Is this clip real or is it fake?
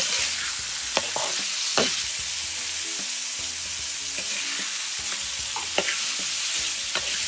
real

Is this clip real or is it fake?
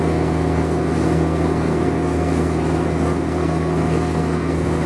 fake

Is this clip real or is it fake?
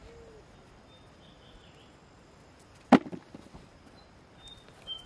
real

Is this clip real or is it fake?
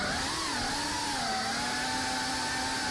real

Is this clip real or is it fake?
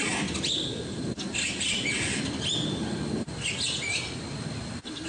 real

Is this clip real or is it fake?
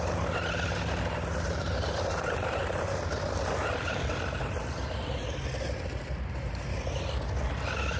real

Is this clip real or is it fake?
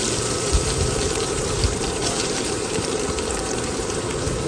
fake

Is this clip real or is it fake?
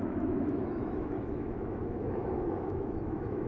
fake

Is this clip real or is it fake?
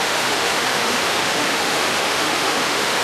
fake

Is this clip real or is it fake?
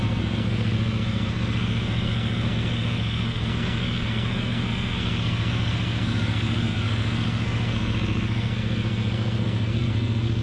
fake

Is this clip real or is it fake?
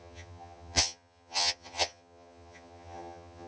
fake